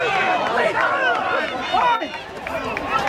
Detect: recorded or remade recorded